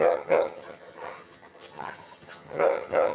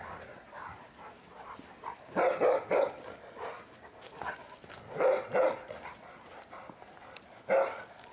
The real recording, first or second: second